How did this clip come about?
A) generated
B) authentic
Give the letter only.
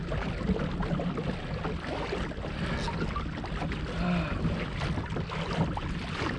B